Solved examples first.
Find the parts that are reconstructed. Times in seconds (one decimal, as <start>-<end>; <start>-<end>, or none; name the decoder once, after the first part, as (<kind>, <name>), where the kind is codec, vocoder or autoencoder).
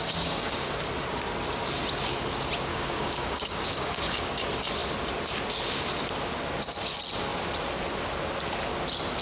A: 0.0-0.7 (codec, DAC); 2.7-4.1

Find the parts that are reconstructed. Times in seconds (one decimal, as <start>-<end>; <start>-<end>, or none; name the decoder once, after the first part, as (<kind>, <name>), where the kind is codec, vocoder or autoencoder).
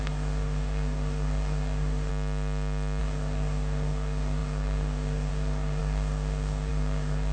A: 0.0-2.1 (codec, DAC); 3.0-7.3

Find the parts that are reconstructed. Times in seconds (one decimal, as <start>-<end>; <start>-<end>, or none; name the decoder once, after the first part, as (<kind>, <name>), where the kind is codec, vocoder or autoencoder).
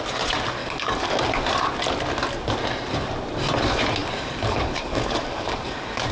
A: 0.6-1.2 (codec, DAC); 4.0-6.1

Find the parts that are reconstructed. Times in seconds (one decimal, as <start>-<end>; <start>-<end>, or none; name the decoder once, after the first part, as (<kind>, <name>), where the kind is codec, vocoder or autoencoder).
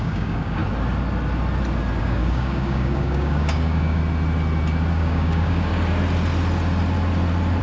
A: 0.0-0.6 (codec, DAC); 2.0-4.0; 4.9-5.7